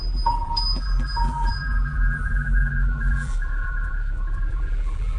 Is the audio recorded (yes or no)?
no